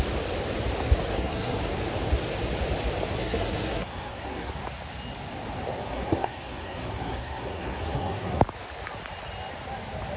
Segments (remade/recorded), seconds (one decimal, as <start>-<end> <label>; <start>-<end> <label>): 0.0-1.1 recorded; 1.1-1.6 remade; 1.6-3.2 recorded; 3.2-4.5 remade; 4.5-5.8 recorded; 5.8-8.4 remade; 8.4-10.2 recorded